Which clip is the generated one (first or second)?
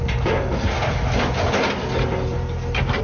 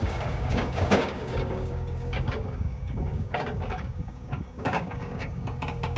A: second